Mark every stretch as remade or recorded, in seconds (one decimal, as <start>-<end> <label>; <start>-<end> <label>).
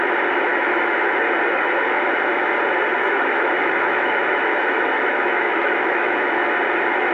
0.0-0.5 recorded; 0.5-1.1 remade; 1.1-2.9 recorded; 2.9-6.3 remade; 6.3-7.1 recorded